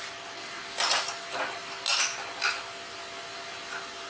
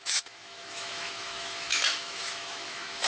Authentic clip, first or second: first